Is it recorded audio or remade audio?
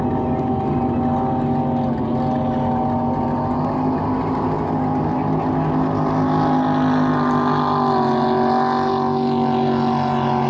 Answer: recorded